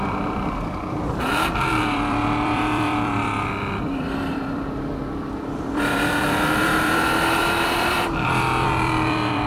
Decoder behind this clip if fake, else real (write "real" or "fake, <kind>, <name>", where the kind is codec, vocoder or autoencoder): fake, vocoder, BigVGAN v2